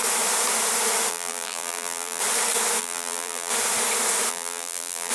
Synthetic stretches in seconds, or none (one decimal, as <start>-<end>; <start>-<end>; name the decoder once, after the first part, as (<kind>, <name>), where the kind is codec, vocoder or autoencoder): 1.1-2.2 (vocoder, BigVGAN v2); 2.8-3.5; 4.3-5.1

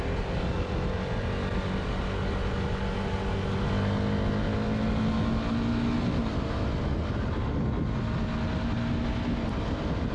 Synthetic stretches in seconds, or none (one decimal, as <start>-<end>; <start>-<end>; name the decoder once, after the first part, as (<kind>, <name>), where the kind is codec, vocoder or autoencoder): none

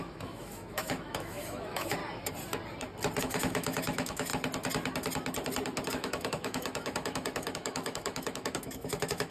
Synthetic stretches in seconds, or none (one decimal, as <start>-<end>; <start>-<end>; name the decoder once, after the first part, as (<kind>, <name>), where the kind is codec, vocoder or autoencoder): 0.0-2.0 (autoencoder, DAC-VAE); 3.2-4.3; 5.9-9.3

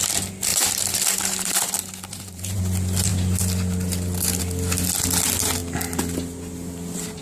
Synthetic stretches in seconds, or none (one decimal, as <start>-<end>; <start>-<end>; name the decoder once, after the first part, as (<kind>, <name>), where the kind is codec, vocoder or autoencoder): 0.5-2.6 (vocoder, BigVGAN v2)

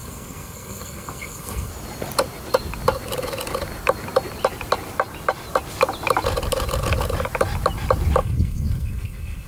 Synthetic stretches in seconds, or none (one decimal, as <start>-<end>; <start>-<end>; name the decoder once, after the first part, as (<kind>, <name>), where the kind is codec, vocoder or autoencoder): 0.0-1.7 (codec, SNAC); 8.2-9.5

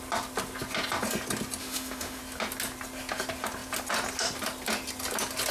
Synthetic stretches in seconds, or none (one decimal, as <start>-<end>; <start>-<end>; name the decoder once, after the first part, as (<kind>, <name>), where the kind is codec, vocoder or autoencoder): 1.6-2.2 (autoencoder, DAC-VAE)